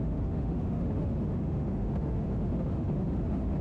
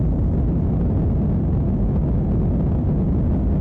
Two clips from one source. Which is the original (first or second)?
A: second